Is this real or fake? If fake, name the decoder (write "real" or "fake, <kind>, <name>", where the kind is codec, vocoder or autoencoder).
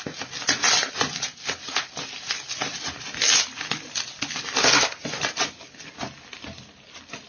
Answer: real